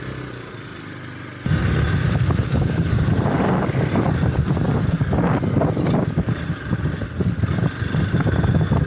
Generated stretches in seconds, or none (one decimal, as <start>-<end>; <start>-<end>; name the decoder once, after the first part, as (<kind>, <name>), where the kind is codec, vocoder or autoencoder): none